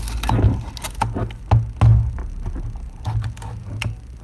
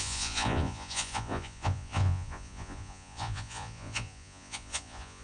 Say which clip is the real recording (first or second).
first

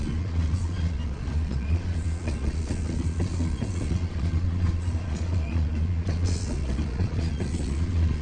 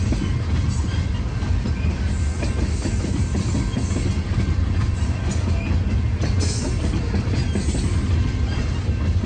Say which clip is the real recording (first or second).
second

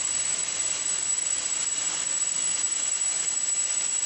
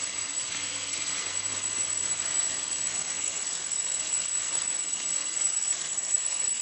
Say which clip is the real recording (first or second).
first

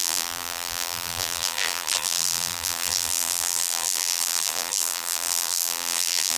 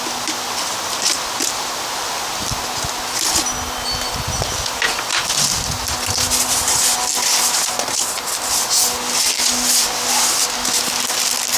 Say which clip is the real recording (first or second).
second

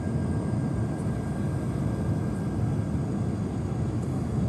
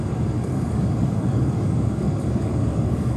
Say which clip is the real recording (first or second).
first